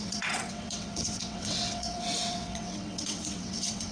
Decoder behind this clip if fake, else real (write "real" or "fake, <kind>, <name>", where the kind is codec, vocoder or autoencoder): fake, vocoder, WaveNeXt